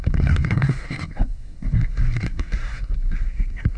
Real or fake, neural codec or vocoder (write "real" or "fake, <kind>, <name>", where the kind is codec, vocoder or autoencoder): fake, codec, SNAC